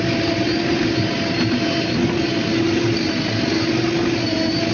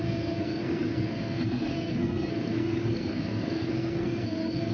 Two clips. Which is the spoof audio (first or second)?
second